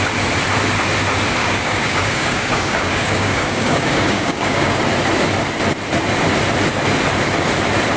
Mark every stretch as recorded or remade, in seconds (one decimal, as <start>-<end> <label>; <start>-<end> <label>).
0.0-1.4 recorded; 1.4-4.8 remade; 4.8-8.0 recorded